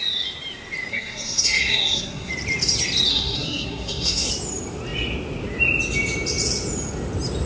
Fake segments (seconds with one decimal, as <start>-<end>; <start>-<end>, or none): 0.9-2.3; 3.1-4.3